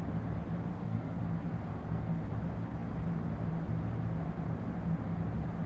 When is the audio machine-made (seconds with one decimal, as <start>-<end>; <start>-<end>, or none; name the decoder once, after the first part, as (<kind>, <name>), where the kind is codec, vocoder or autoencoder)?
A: 0.7-1.2 (codec, SNAC); 1.7-2.3